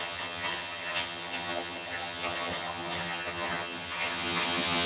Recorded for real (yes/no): no